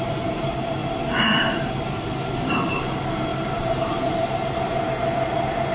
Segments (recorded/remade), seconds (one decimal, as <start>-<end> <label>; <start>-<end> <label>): 0.0-0.8 remade; 0.8-2.5 recorded; 2.5-5.7 remade